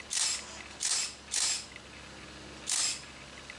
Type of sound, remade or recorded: recorded